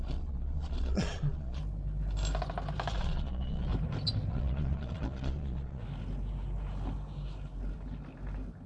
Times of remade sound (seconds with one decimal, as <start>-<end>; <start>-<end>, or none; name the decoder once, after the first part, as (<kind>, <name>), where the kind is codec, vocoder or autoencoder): 0.0-1.6 (vocoder, Vocos); 3.0-3.7; 4.3-5.8